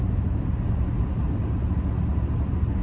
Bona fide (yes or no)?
yes